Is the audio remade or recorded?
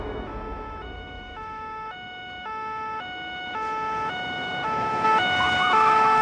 remade